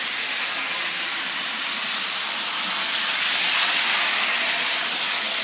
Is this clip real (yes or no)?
yes